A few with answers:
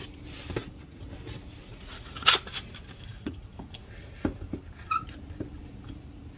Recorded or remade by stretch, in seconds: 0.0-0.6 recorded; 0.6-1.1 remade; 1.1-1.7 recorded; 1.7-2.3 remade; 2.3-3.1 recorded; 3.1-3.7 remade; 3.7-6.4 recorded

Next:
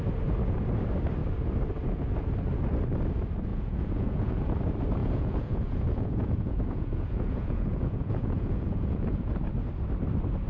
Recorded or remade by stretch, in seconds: 0.0-3.5 recorded; 3.5-4.4 remade; 4.4-5.0 recorded; 5.0-9.3 remade; 9.3-10.5 recorded

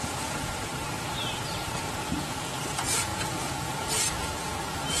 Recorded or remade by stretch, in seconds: 0.0-0.7 remade; 0.7-1.5 recorded; 1.5-5.0 remade

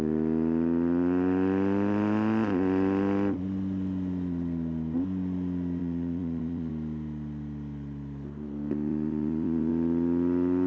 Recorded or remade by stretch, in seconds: 0.0-5.8 recorded; 5.8-6.7 remade; 6.7-8.9 recorded; 8.9-9.7 remade; 9.7-10.7 recorded

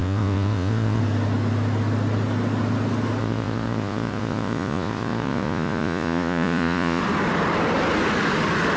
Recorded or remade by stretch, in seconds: 0.0-1.0 remade; 1.0-3.2 recorded; 3.2-7.0 remade; 7.0-8.8 recorded

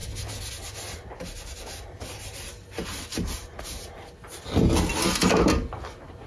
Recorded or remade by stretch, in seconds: 0.0-6.3 recorded

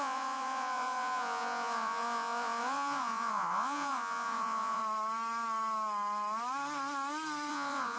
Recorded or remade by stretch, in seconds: 0.0-4.8 remade; 4.8-7.5 recorded; 7.5-8.0 remade

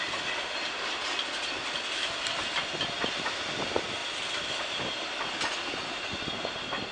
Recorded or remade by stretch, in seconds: 0.0-6.9 recorded